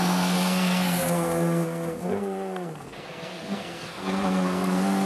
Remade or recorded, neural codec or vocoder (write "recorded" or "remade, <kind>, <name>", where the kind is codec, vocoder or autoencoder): remade, codec, SNAC